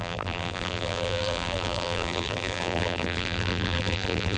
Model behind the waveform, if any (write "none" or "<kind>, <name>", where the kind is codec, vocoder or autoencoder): vocoder, BigVGAN v2